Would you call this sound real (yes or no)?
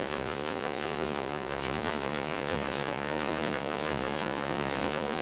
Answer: no